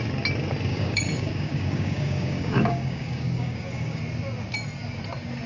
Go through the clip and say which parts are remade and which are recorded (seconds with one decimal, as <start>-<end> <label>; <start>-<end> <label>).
0.0-0.7 recorded; 0.7-4.0 remade; 4.0-5.5 recorded